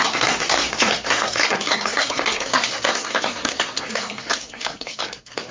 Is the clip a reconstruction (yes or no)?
yes